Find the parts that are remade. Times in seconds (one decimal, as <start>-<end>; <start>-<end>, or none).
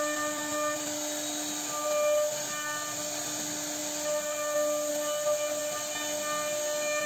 none